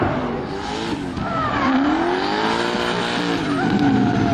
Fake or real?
real